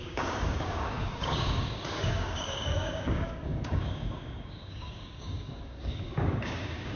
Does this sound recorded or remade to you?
remade